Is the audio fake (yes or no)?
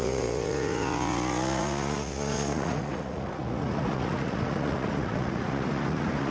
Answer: yes